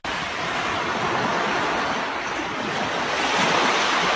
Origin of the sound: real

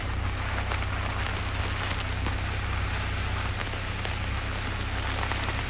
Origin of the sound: real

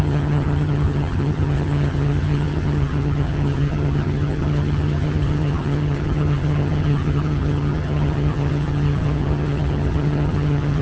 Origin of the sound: fake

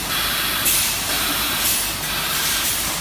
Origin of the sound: fake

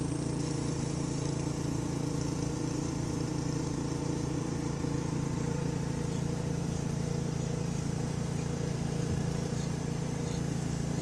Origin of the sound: fake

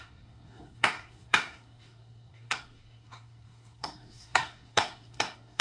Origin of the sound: fake